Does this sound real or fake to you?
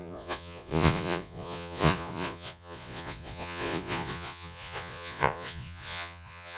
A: fake